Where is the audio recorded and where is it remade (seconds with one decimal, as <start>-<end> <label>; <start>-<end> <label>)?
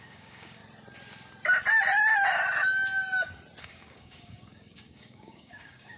0.0-0.6 remade; 0.6-3.6 recorded; 3.6-6.0 remade